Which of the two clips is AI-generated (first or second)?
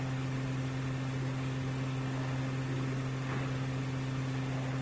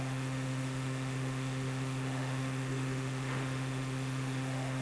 second